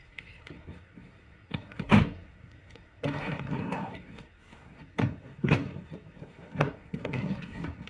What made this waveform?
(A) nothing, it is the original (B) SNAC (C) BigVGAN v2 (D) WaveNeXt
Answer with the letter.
B